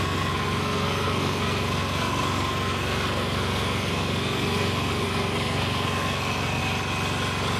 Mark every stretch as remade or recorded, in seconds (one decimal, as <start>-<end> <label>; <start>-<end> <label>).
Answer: 0.0-6.6 remade; 6.6-7.6 recorded